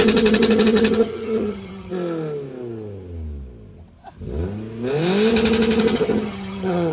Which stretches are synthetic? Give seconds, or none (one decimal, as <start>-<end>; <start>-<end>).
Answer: 0.0-1.9; 5.8-6.9

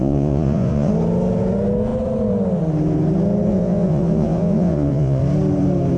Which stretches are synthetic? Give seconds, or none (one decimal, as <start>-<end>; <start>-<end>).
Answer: 0.0-0.9; 3.5-5.2

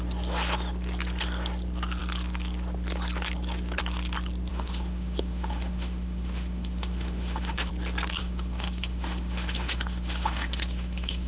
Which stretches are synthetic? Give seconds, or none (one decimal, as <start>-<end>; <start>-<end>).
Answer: 4.5-7.7; 8.2-11.3